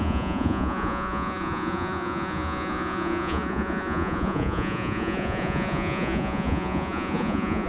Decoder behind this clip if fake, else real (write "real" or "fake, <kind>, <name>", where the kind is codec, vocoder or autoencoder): fake, vocoder, Vocos